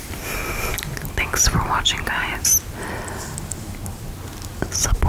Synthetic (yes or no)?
no